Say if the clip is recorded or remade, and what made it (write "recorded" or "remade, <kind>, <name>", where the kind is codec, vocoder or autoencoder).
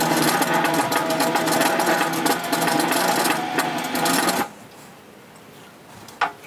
recorded